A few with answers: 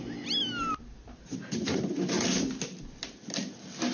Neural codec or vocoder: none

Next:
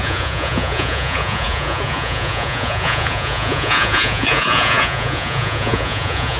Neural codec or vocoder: vocoder, Vocos